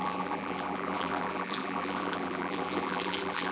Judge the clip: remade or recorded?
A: remade